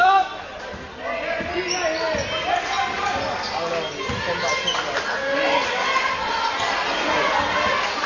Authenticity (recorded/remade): recorded